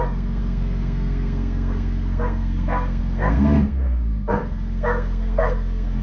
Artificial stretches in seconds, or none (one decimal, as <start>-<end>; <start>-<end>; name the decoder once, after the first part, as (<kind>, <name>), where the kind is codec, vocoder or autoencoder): 0.0-6.0 (codec, SNAC)